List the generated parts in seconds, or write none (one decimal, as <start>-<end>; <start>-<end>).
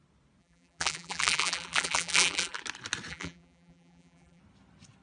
0.4-2.6; 3.1-4.4